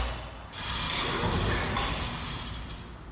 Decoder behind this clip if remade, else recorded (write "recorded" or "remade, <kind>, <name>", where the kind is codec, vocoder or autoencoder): recorded